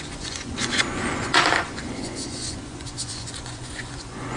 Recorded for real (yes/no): no